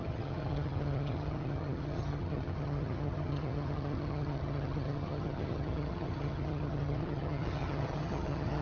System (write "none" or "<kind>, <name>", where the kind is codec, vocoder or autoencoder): vocoder, HiFi-GAN